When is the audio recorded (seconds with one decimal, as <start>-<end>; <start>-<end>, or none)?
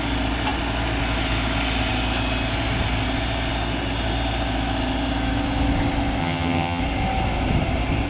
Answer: 0.0-6.2; 6.8-8.1